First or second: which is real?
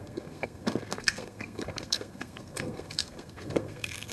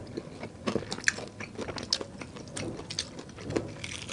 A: second